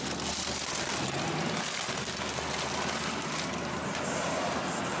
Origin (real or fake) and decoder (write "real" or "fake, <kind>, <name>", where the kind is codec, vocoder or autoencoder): real